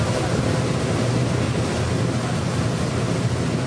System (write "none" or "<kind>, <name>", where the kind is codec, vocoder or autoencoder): none